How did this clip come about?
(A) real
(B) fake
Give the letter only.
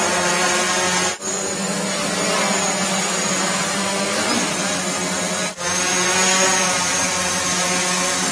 A